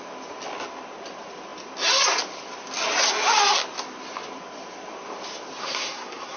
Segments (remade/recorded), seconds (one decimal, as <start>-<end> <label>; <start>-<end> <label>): 0.0-5.6 recorded; 5.6-6.4 remade